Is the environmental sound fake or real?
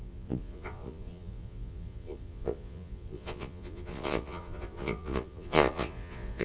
fake